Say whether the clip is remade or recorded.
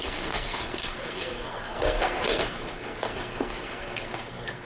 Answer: remade